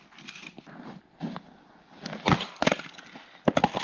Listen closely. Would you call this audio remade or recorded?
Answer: recorded